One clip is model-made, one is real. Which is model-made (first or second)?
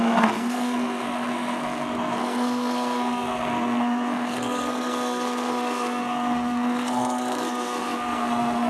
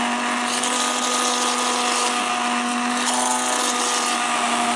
first